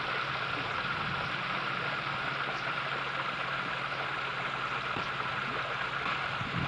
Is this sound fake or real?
real